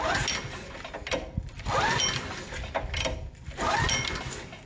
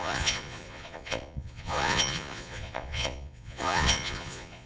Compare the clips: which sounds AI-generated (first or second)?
second